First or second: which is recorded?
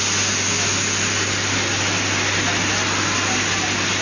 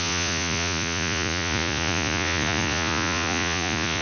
first